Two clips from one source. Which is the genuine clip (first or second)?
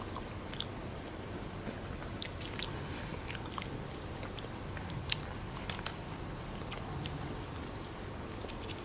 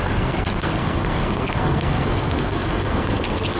first